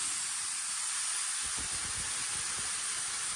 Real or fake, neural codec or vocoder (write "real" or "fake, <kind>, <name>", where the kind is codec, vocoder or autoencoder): real